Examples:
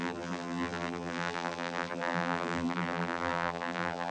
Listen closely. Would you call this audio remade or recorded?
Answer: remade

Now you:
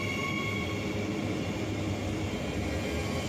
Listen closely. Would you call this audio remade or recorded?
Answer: recorded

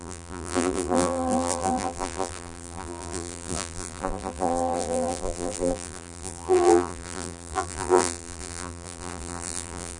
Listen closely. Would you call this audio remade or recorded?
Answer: remade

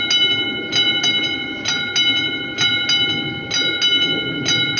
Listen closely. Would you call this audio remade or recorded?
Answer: recorded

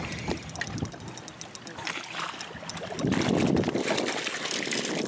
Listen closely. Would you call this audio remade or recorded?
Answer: recorded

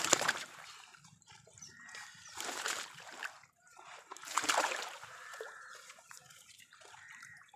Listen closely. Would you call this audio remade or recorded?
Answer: remade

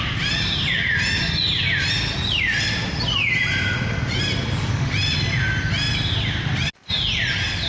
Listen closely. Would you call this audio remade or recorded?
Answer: recorded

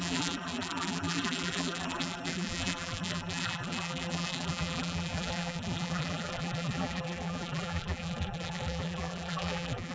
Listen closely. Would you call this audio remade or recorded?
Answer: remade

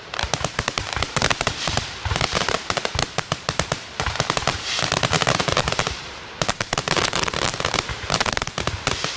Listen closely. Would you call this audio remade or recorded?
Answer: remade